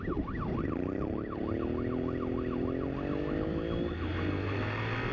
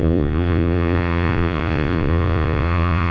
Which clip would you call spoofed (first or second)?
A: second